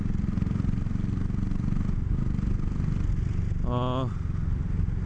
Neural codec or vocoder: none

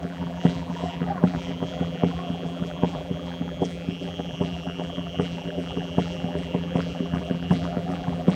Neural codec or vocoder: vocoder, BigVGAN v2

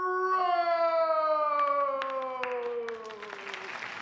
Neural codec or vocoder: none